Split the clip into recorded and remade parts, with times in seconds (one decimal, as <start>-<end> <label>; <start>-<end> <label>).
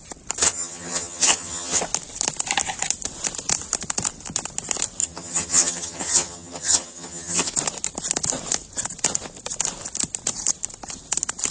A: 0.0-0.4 recorded; 0.4-1.8 remade; 1.8-5.0 recorded; 5.0-7.5 remade; 7.5-11.5 recorded